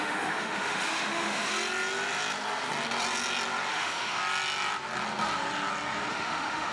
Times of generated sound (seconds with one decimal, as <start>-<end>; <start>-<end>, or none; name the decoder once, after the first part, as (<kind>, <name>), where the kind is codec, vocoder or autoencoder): 0.0-1.5 (autoencoder, DAC-VAE); 3.7-4.2; 6.1-6.7